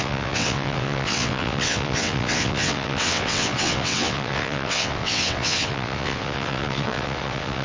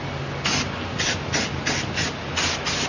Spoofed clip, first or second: first